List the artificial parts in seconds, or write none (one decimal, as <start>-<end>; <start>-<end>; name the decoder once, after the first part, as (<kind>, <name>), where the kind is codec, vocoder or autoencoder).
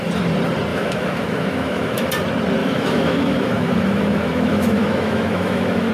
0.7-2.1 (autoencoder, DAC-VAE); 2.6-5.9